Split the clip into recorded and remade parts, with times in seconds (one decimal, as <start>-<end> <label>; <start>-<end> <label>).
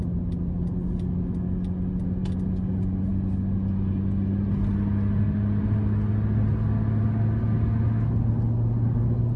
0.0-9.4 recorded